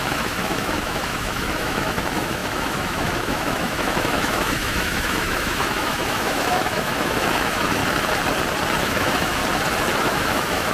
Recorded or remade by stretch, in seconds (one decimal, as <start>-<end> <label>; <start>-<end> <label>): 0.0-7.8 remade; 7.8-8.8 recorded; 8.8-9.4 remade; 9.4-10.0 recorded; 10.0-10.7 remade